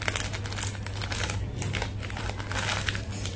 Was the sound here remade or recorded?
recorded